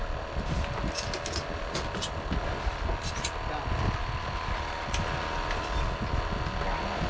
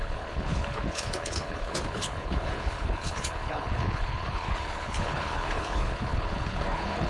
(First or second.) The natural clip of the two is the first